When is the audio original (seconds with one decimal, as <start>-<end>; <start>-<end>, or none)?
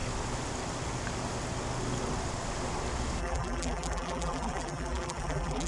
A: 0.0-3.2